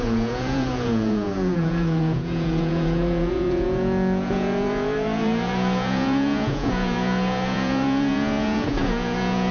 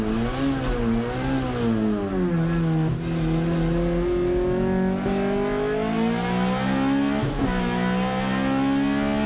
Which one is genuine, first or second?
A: second